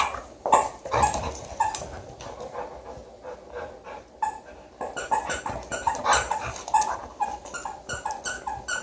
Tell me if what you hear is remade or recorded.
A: recorded